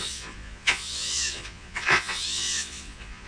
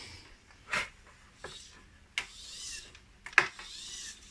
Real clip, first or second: second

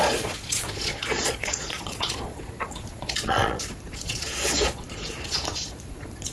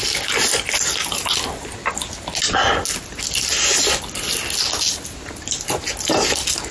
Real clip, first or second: second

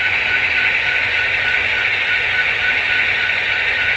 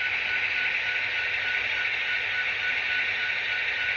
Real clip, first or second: second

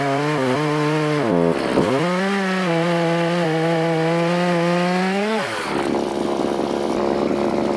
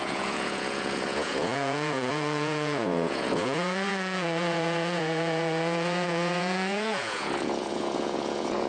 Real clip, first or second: first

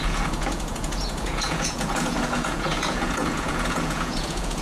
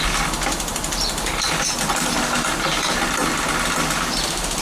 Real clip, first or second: second